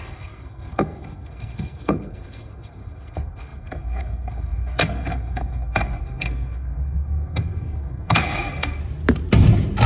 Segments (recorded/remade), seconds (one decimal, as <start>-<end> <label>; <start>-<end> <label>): 0.0-8.8 remade; 8.8-9.9 recorded